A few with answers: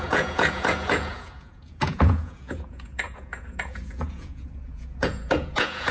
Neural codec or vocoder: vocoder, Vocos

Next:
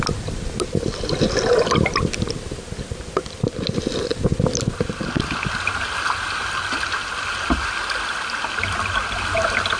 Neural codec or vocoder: none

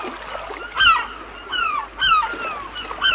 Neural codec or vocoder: none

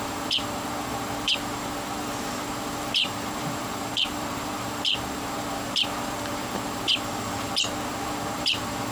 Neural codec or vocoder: vocoder, BigVGAN v2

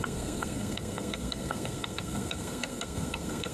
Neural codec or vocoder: codec, SNAC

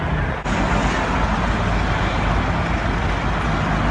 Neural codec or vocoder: none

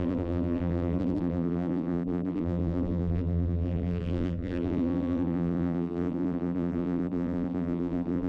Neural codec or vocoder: vocoder, BigVGAN v2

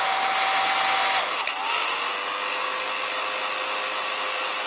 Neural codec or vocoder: none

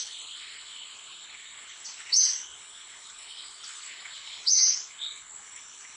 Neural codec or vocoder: codec, HILCodec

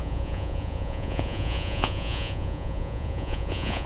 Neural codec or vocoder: vocoder, Vocos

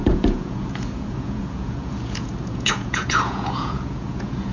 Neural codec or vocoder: vocoder, Vocos